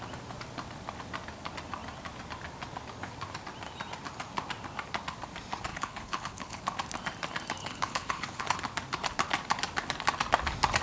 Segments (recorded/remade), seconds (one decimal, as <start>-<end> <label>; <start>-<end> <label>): 0.0-5.7 recorded; 5.7-6.6 remade; 6.6-7.6 recorded; 7.6-8.4 remade; 8.4-10.8 recorded